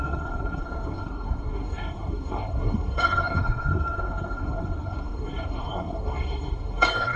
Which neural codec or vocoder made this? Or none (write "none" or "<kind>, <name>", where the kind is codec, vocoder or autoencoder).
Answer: codec, SNAC